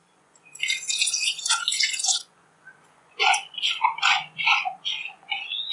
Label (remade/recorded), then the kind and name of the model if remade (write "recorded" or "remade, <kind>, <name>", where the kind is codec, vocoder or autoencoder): remade, vocoder, Vocos